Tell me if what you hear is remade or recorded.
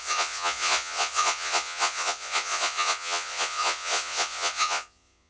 remade